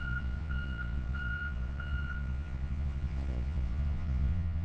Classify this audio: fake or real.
fake